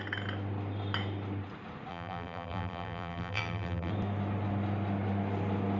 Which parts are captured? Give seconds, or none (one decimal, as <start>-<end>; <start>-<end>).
0.0-1.9; 3.9-5.8